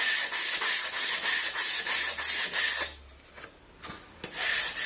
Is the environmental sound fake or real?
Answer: real